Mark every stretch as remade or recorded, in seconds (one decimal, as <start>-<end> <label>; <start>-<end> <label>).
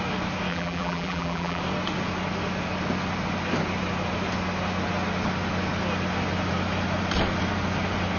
0.0-0.5 recorded; 0.5-1.6 remade; 1.6-8.2 recorded